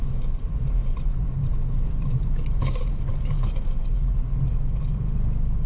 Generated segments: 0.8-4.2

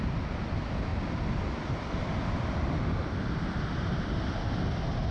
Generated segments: none